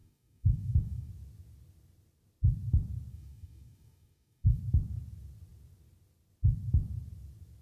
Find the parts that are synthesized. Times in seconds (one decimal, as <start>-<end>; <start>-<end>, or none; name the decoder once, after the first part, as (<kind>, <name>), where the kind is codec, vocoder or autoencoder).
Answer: 0.0-1.1 (codec, DAC); 3.1-4.6